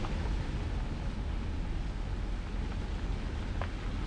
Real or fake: real